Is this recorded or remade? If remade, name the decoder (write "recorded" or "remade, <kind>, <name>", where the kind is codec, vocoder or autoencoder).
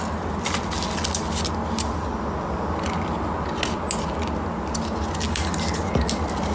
recorded